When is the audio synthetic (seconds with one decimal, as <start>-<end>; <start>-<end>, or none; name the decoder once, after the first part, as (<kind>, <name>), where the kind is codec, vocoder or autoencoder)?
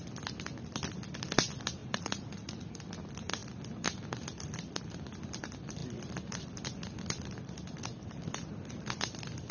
1.8-2.7 (vocoder, Vocos)